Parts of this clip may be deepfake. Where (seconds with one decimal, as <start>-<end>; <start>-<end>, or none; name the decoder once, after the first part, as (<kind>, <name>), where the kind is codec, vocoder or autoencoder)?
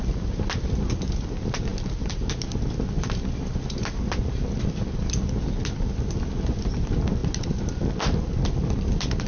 none